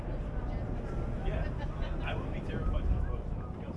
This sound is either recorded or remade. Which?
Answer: recorded